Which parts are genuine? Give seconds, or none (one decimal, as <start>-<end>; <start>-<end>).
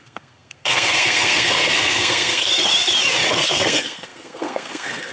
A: 2.5-3.3